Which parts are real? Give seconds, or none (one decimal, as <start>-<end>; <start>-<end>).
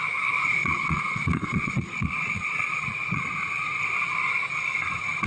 0.0-0.6; 3.8-5.3